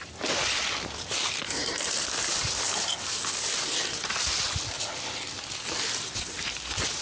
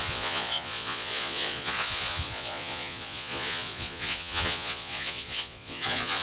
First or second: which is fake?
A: second